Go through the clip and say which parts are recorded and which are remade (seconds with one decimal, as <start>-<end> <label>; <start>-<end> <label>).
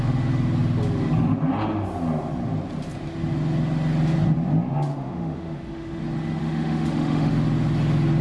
0.0-4.9 recorded; 4.9-6.0 remade; 6.0-6.4 recorded; 6.4-7.3 remade; 7.3-8.2 recorded